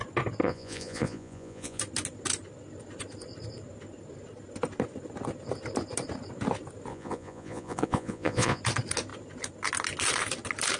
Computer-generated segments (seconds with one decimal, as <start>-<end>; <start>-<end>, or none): 0.4-1.8; 6.9-8.6